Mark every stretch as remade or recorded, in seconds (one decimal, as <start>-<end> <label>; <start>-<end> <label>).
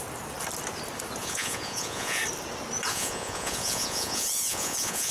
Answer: 0.0-1.2 recorded; 1.2-2.2 remade; 2.2-2.9 recorded; 2.9-5.1 remade